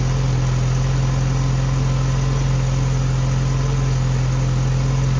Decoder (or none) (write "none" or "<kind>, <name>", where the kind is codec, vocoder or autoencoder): none